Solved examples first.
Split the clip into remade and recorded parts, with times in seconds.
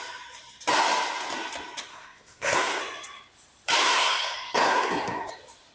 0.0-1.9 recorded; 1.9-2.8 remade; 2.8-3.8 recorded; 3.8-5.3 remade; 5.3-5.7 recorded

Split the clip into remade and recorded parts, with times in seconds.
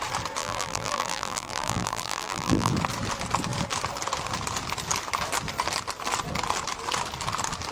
0.0-0.4 recorded; 0.4-2.7 remade; 2.7-7.7 recorded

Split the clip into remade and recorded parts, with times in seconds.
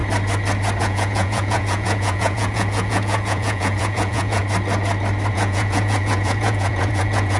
0.0-0.8 recorded; 0.8-4.4 remade; 4.4-5.3 recorded; 5.3-7.4 remade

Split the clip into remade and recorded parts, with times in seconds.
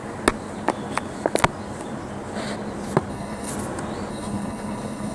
0.0-3.1 recorded; 3.1-3.5 remade; 3.5-4.1 recorded; 4.1-5.1 remade